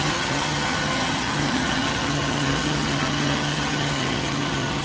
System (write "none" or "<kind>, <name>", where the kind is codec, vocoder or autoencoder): vocoder, HiFi-GAN